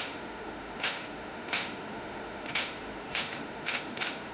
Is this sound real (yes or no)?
no